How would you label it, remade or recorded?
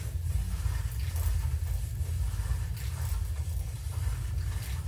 recorded